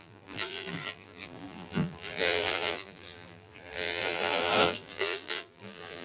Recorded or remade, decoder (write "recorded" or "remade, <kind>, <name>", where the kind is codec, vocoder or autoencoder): remade, vocoder, BigVGAN v2